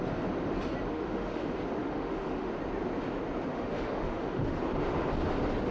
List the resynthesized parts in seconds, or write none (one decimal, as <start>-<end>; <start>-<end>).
0.9-1.4; 1.8-2.5; 3.5-4.6